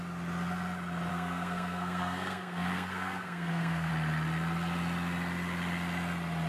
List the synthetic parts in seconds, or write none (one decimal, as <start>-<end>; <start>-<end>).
1.1-3.9